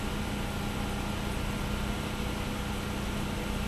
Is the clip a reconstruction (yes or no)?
no